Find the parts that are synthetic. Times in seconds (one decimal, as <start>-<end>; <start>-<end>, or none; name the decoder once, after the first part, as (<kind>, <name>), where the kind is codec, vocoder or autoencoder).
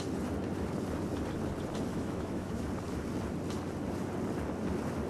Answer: 1.9-2.6 (autoencoder, DAC-VAE)